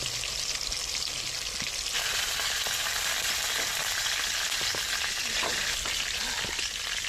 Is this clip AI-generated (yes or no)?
no